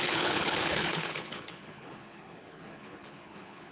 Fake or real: fake